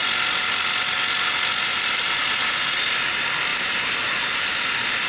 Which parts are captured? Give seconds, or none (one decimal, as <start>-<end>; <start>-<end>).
0.0-1.7; 3.0-3.5

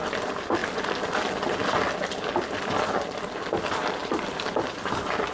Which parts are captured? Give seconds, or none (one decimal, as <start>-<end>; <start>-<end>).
0.6-2.8